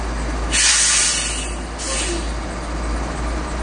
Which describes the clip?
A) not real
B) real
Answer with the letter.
B